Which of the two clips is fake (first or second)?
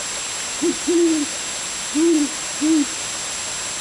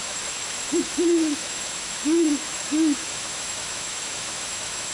second